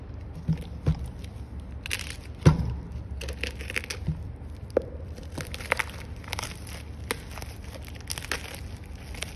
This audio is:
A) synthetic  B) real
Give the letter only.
B